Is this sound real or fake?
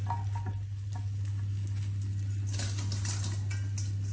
real